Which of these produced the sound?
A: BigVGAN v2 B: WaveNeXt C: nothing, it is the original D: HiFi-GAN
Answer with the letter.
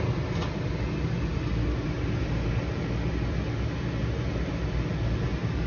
C